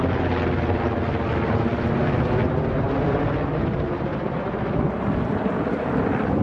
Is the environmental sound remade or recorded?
recorded